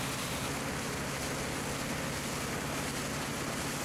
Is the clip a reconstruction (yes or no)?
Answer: no